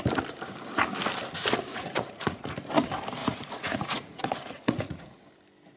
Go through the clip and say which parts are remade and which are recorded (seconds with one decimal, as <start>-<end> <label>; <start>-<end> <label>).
0.0-1.7 recorded; 1.7-2.5 remade; 2.5-3.2 recorded; 3.2-5.2 remade; 5.2-5.8 recorded

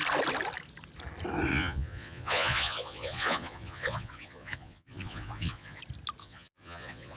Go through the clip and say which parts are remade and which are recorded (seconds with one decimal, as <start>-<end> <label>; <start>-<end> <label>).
0.0-1.5 recorded; 1.5-5.8 remade; 5.8-6.2 recorded; 6.2-7.2 remade

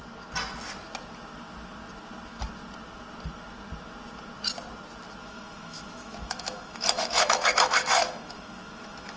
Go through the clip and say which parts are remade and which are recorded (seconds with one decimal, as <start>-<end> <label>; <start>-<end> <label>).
0.0-5.2 recorded; 5.2-9.2 remade

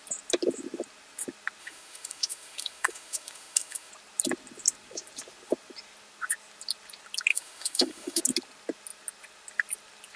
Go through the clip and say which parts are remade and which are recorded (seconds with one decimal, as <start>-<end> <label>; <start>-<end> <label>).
0.0-1.6 recorded; 1.6-3.9 remade; 3.9-7.3 recorded; 7.3-8.2 remade; 8.2-10.2 recorded

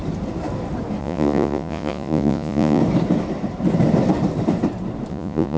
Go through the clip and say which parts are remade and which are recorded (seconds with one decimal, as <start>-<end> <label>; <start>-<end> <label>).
0.0-1.0 recorded; 1.0-2.8 remade; 2.8-5.1 recorded; 5.1-5.6 remade

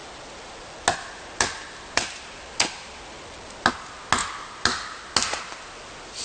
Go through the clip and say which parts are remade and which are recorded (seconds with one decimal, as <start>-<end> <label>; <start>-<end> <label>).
0.0-6.2 recorded

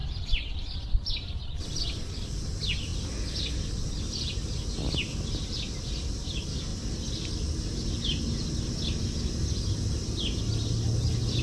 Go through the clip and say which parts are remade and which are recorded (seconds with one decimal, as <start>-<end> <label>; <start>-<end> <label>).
0.0-1.8 remade; 1.8-11.4 recorded